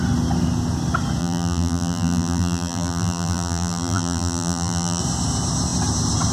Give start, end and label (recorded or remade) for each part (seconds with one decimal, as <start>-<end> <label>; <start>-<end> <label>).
0.0-1.2 recorded; 1.2-5.0 remade; 5.0-6.3 recorded